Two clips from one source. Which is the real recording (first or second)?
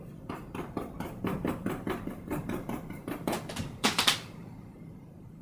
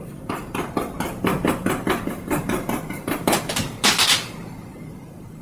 second